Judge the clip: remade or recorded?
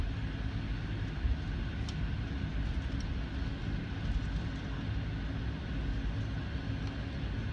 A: recorded